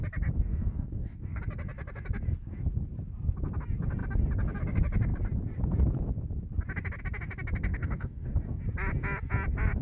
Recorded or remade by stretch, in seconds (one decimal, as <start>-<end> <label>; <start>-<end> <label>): 0.0-0.5 recorded; 0.5-1.4 remade; 1.4-7.7 recorded; 7.7-8.6 remade; 8.6-9.8 recorded